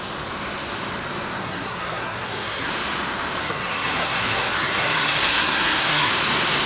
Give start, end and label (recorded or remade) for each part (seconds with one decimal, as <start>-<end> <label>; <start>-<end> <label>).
0.0-1.4 recorded; 1.4-2.7 remade; 2.7-3.4 recorded; 3.4-6.1 remade; 6.1-6.7 recorded